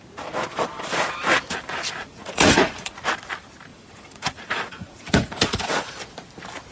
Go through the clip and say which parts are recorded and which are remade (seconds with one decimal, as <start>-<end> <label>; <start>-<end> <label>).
0.0-2.0 recorded; 2.0-2.9 remade; 2.9-3.7 recorded; 3.7-5.9 remade; 5.9-6.7 recorded